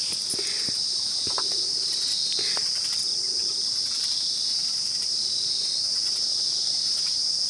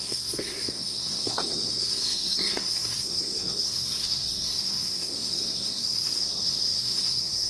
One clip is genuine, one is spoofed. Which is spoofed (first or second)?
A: second